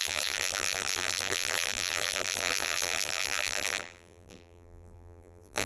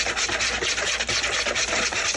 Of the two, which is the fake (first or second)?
first